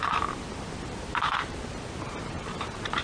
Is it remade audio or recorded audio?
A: remade